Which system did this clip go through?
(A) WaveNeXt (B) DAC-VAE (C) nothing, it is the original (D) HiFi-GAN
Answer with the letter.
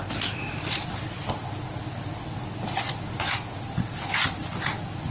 C